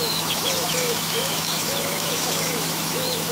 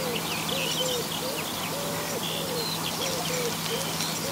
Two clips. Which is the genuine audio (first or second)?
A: second